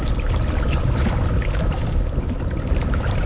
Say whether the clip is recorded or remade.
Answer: remade